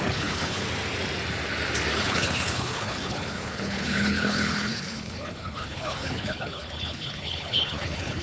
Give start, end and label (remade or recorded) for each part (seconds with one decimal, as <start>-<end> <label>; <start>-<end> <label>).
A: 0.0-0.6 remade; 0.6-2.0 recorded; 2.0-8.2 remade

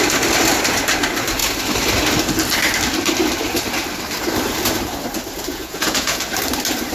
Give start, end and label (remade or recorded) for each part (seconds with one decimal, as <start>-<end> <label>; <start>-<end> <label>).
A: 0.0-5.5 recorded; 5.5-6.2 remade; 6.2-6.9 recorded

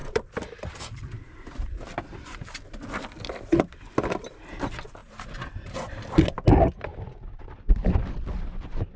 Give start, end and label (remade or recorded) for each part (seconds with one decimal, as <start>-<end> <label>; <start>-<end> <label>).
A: 0.0-3.8 remade; 3.8-9.0 recorded

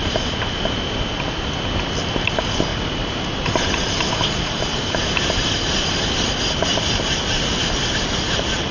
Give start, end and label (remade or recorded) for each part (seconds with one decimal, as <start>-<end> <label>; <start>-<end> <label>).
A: 0.0-0.7 remade; 0.7-2.7 recorded; 2.7-5.2 remade; 5.2-6.7 recorded; 6.7-7.5 remade; 7.5-8.7 recorded

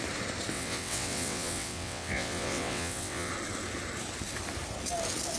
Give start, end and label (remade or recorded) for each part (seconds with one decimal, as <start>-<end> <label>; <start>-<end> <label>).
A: 0.0-0.5 recorded; 0.5-3.3 remade; 3.3-5.4 recorded

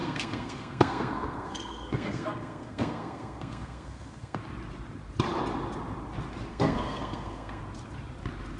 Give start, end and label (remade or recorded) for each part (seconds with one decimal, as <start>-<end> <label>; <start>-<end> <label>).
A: 0.0-4.4 remade; 4.4-6.5 recorded; 6.5-7.6 remade; 7.6-8.6 recorded

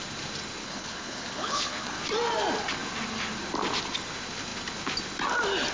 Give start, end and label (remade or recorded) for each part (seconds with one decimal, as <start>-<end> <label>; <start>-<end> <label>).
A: 0.0-0.6 recorded; 0.6-2.0 remade; 2.0-5.7 recorded